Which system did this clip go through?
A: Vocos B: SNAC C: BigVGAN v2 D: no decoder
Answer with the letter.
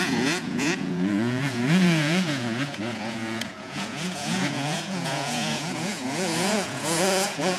A